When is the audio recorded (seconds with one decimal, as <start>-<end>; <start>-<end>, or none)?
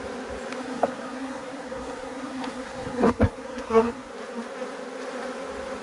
0.0-0.6; 4.1-5.8